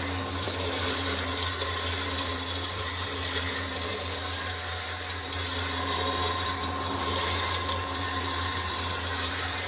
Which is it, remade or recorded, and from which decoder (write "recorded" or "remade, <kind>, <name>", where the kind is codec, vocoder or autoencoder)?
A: remade, vocoder, BigVGAN v2